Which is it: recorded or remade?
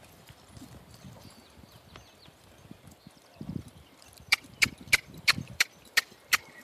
remade